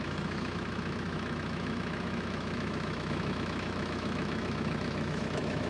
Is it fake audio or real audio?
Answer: fake